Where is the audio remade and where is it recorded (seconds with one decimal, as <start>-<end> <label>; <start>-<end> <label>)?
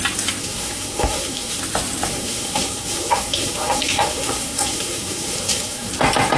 0.0-0.4 recorded; 0.4-1.6 remade; 1.6-2.1 recorded; 2.1-5.9 remade; 5.9-6.4 recorded